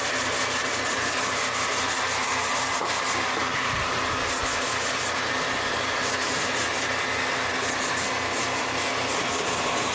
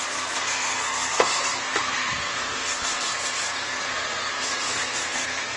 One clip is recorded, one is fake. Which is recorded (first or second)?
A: first